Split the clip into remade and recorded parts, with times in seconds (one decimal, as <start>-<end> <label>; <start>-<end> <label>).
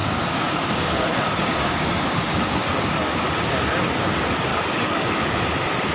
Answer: 0.0-2.8 remade; 2.8-4.5 recorded; 4.5-5.1 remade; 5.1-5.9 recorded